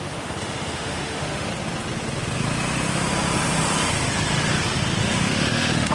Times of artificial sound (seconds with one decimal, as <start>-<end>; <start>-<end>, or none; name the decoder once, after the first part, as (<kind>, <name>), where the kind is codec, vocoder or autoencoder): 0.0-1.5 (autoencoder, DAC-VAE); 5.0-5.9